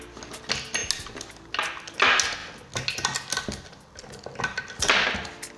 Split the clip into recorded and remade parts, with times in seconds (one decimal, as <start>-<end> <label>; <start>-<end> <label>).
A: 0.0-5.6 recorded